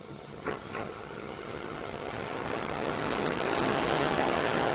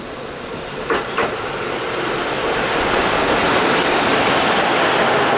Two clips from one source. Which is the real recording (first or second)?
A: second